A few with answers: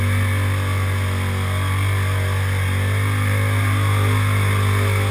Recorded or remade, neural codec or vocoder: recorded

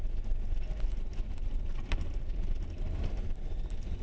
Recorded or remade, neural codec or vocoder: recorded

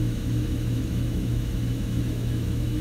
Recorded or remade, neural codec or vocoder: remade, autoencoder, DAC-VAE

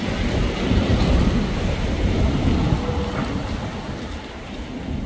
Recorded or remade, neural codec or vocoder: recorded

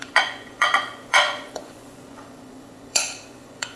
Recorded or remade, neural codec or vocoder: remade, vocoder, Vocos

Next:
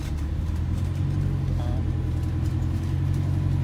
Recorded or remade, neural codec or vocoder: recorded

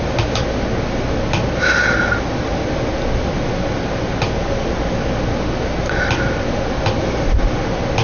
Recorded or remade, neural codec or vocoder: recorded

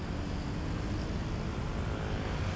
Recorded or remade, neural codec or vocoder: recorded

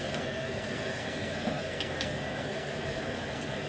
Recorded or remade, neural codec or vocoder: remade, codec, SNAC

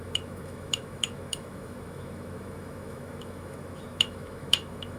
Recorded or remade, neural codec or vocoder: remade, autoencoder, DAC-VAE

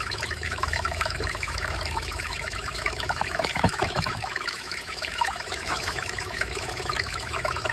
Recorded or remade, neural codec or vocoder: remade, autoencoder, DAC-VAE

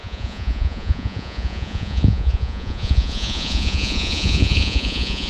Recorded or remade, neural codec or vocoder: remade, vocoder, Vocos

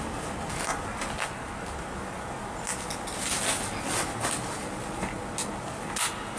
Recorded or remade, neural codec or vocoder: recorded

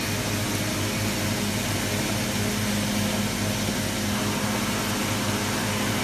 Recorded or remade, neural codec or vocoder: recorded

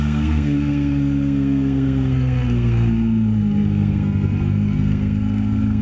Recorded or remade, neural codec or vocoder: remade, codec, SNAC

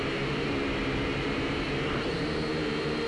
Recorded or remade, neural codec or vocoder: remade, vocoder, BigVGAN v2